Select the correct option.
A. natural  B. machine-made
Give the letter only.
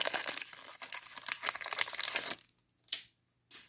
A